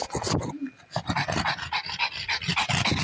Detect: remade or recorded recorded